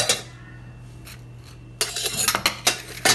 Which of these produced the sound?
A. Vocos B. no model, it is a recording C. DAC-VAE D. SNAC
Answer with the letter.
B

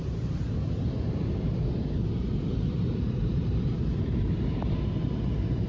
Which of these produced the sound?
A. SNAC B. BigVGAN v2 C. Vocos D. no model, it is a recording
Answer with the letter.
B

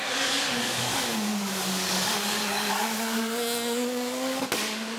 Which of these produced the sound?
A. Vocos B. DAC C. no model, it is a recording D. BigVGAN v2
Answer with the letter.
B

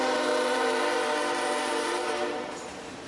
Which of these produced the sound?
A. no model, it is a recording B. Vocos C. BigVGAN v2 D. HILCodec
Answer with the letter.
C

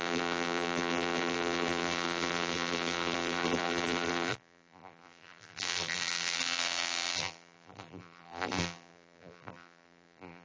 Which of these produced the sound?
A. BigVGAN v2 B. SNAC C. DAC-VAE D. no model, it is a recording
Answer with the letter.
A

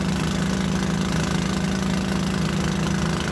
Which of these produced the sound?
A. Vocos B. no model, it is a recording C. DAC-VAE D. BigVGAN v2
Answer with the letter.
B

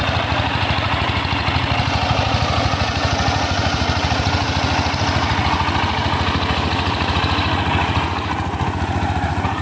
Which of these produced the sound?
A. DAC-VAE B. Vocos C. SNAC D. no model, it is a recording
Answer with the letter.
B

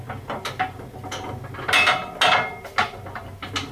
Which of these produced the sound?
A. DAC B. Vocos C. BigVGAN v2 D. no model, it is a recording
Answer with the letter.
D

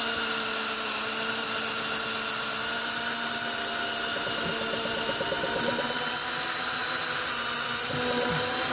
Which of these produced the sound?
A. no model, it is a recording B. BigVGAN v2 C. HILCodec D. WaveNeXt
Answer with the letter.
A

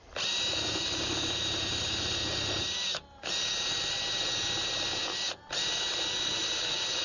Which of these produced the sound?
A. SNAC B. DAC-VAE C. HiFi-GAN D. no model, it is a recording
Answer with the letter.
D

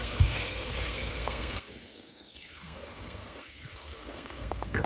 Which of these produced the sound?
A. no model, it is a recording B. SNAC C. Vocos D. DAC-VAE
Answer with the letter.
B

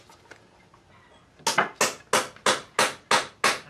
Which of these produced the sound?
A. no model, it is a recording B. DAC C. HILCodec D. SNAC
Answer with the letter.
A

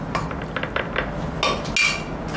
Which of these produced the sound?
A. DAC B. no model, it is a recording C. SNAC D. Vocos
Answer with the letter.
B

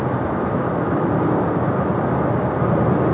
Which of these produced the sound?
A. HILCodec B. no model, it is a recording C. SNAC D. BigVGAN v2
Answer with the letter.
B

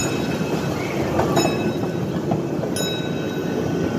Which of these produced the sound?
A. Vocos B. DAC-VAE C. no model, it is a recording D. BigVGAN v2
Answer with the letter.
C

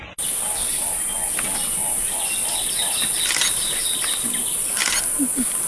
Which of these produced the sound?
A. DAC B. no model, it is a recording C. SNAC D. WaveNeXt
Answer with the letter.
B